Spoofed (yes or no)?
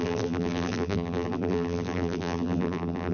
yes